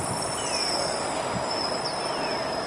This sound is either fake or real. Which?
real